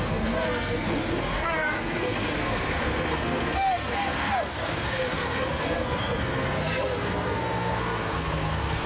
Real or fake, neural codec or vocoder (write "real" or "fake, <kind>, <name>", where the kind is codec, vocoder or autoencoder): fake, codec, SNAC